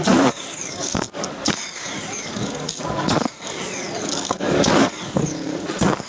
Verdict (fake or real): fake